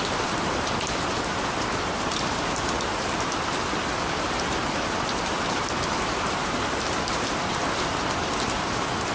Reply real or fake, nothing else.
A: real